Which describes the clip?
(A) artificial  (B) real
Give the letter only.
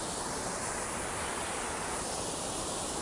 B